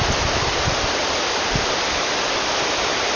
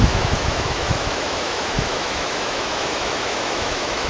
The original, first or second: first